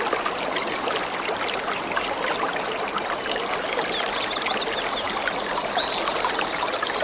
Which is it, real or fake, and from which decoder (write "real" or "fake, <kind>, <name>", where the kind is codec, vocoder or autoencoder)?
real